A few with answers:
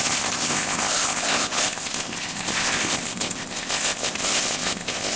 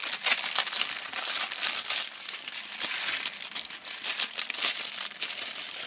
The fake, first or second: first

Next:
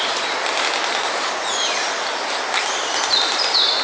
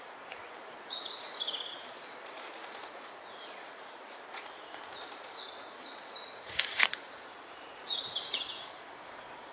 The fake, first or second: second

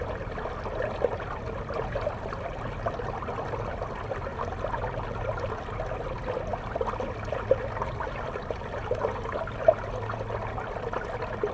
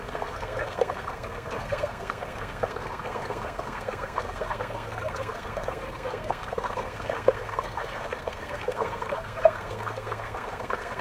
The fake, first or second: second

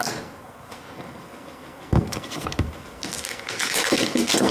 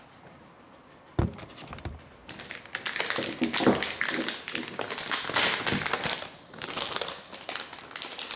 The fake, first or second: first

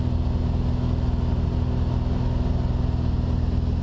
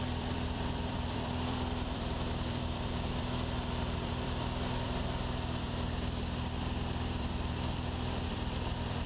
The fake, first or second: second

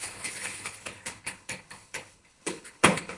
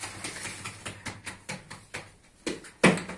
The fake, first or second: first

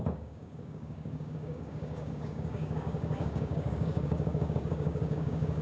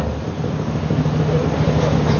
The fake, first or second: first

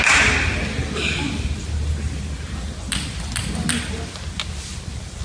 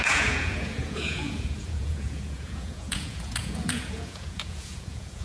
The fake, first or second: second